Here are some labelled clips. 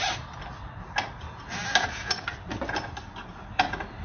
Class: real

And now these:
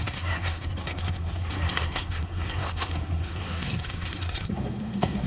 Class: fake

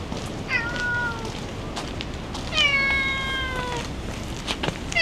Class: real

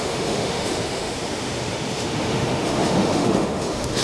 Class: fake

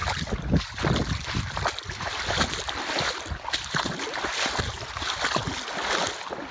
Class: real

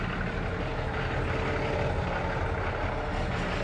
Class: real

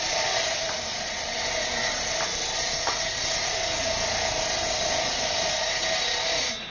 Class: real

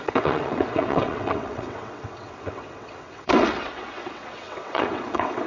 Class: fake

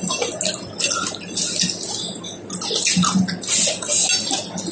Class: real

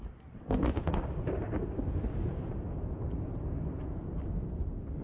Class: real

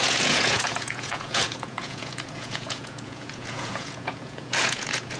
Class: fake